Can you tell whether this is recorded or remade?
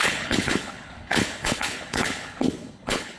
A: remade